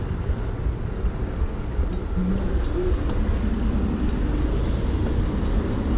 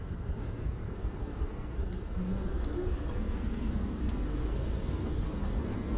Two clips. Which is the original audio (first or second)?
first